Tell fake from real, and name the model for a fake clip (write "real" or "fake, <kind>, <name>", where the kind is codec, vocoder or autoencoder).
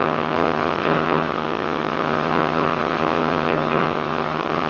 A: fake, vocoder, HiFi-GAN